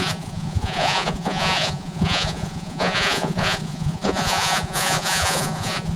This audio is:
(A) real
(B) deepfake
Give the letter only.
B